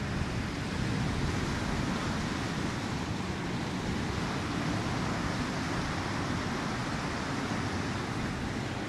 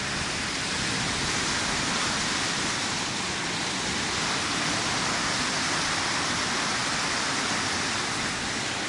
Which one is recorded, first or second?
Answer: first